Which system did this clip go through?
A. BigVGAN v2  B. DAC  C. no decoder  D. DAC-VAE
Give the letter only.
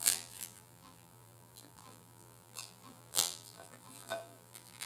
A